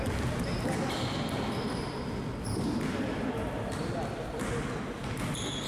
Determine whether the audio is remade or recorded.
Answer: recorded